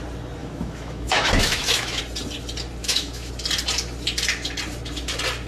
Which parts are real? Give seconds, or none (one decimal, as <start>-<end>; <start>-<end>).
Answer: 0.0-0.4; 2.0-2.8; 3.3-5.5